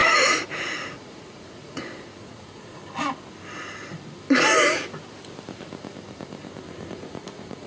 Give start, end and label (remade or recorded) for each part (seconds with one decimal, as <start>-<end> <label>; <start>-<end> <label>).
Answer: 0.0-2.8 remade; 2.8-6.9 recorded; 6.9-7.7 remade